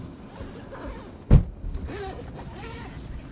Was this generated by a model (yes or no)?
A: no